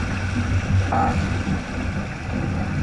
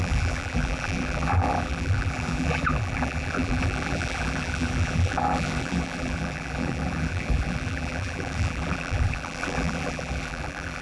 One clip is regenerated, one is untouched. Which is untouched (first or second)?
first